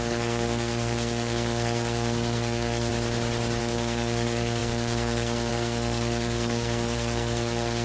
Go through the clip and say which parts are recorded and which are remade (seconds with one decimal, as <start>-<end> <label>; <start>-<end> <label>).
0.0-2.9 remade; 2.9-3.6 recorded; 3.6-7.8 remade